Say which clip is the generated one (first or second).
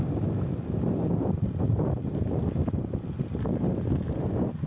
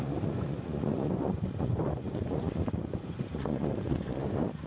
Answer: second